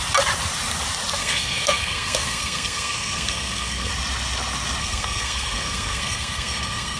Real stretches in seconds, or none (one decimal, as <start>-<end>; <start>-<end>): 0.0-1.2; 3.9-4.8